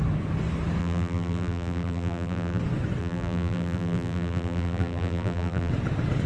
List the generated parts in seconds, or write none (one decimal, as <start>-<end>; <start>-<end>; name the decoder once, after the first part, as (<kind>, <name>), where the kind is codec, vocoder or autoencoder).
0.8-2.6 (vocoder, BigVGAN v2); 3.0-5.7